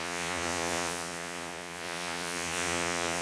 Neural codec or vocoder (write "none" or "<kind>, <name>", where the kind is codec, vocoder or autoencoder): vocoder, Vocos